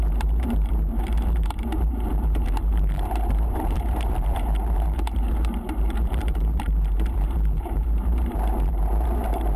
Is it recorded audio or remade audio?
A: remade